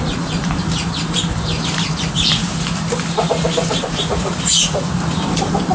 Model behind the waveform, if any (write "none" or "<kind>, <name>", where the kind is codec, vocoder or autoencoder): vocoder, BigVGAN v2